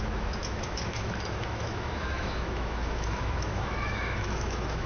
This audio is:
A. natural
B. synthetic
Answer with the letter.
B